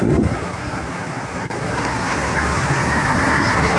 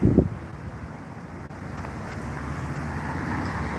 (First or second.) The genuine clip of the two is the second